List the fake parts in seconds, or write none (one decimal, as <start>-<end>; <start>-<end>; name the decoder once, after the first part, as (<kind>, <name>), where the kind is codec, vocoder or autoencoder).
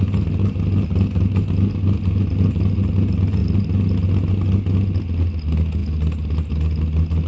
none